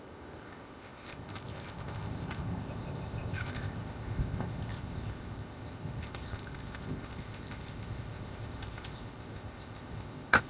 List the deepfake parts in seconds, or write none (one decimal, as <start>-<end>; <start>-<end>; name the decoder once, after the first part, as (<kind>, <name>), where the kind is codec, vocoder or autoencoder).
0.0-10.5 (codec, ZipCodec)